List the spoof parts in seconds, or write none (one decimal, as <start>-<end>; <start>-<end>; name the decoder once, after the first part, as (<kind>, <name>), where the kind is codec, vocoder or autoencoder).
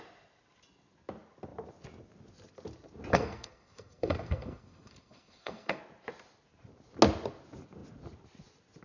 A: 3.1-5.8 (codec, SNAC)